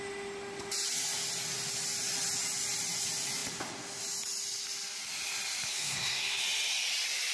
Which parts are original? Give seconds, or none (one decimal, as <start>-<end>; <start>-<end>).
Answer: 0.0-5.7; 6.4-7.3